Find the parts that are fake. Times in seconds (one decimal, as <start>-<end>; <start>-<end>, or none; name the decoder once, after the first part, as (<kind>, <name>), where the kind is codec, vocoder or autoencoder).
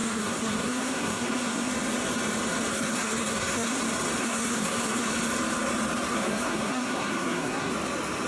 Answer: 0.0-1.7 (codec, SNAC); 2.7-3.8; 4.2-5.1; 6.1-7.7